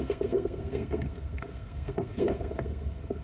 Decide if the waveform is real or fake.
fake